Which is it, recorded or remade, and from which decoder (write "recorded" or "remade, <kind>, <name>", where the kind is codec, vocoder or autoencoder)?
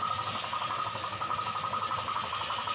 recorded